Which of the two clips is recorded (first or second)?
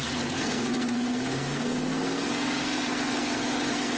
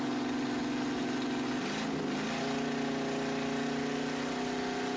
second